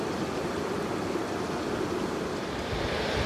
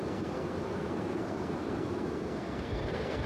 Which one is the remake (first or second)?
second